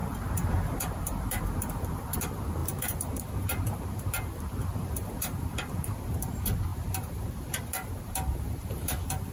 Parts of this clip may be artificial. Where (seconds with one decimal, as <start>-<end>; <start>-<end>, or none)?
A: 0.0-9.3